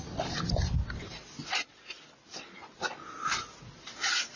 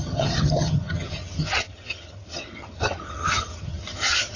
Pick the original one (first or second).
first